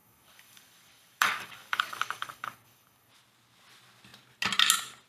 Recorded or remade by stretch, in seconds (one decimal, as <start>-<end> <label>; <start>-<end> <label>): 0.0-3.1 remade; 3.1-5.1 recorded